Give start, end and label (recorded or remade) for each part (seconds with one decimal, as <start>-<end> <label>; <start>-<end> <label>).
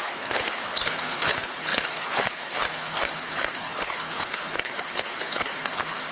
0.0-6.1 remade